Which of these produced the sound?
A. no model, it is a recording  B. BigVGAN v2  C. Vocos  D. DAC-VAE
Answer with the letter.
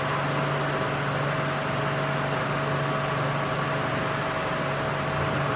A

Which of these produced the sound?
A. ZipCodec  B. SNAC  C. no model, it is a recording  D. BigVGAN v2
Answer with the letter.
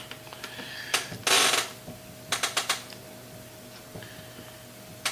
C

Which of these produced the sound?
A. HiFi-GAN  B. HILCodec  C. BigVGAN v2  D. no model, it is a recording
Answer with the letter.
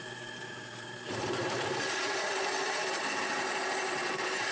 C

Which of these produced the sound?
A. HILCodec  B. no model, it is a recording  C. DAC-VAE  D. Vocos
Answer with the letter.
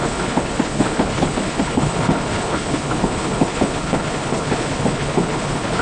A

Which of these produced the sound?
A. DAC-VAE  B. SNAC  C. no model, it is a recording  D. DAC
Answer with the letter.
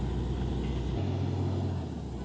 C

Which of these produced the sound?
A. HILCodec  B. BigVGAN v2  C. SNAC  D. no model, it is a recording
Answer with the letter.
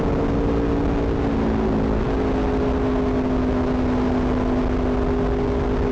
D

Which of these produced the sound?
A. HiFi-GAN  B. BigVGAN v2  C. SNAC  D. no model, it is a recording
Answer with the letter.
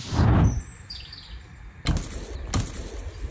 D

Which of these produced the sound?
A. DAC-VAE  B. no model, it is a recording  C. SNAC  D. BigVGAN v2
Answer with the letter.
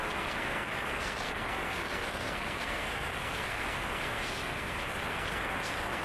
C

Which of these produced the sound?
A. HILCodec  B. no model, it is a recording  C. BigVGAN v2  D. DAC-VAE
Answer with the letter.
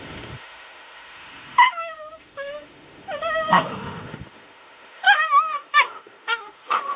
D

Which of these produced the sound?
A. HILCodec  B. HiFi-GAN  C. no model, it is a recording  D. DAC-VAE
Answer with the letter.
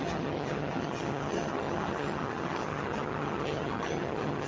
B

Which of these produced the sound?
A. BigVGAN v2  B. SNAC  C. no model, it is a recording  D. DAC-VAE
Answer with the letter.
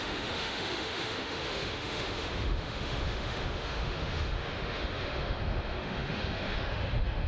D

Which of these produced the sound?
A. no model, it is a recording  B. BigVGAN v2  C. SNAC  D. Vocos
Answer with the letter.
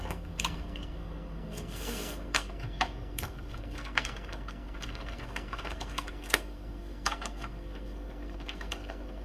C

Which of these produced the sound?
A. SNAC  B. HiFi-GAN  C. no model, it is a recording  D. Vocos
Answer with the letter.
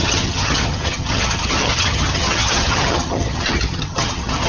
B